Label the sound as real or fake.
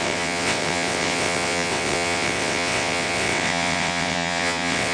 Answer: fake